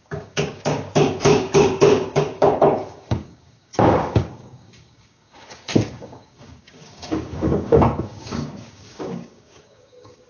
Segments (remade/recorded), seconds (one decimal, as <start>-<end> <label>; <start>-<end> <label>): 0.0-10.3 remade